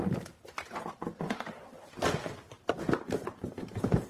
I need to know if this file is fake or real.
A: fake